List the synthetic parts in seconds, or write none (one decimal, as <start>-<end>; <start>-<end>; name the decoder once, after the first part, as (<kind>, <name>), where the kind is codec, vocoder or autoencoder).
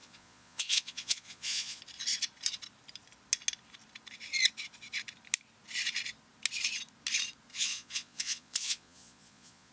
0.0-1.8 (vocoder, Vocos); 7.5-9.7